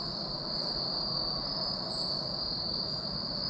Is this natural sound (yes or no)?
no